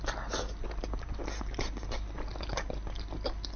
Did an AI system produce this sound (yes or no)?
no